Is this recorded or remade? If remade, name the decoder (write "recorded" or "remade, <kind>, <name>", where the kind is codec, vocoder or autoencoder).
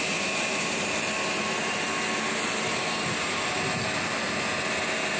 recorded